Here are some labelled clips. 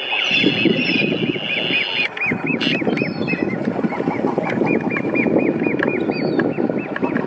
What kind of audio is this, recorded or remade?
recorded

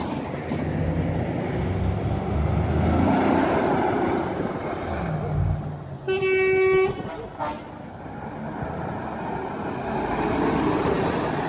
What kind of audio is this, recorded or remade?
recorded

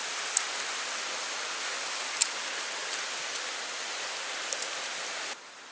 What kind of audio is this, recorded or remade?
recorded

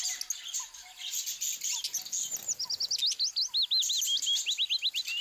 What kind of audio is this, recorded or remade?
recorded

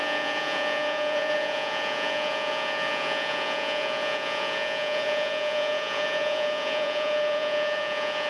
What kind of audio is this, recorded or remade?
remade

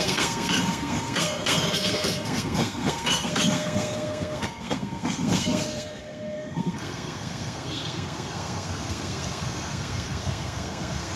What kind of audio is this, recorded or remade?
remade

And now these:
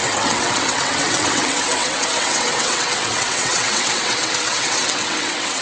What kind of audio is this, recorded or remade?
remade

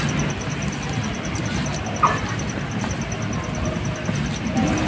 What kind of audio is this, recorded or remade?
recorded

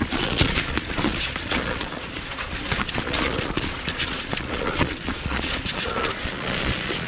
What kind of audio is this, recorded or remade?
remade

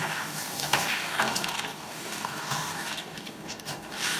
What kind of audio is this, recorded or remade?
remade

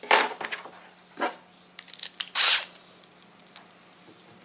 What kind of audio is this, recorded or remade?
recorded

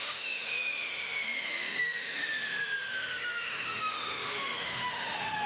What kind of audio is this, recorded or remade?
remade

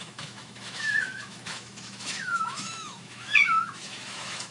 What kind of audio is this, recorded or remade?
remade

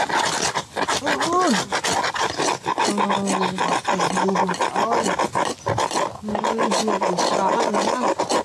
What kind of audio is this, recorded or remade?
recorded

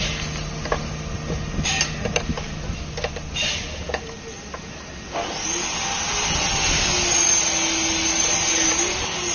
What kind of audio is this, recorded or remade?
recorded